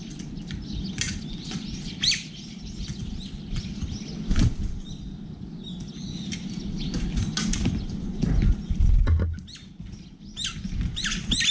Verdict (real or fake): real